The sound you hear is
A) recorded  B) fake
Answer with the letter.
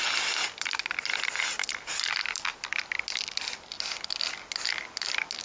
A